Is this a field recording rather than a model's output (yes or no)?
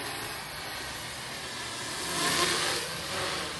yes